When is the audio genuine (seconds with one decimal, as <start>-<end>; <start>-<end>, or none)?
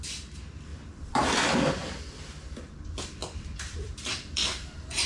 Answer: 0.0-0.7; 1.2-3.2